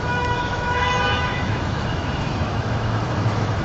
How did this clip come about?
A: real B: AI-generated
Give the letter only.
B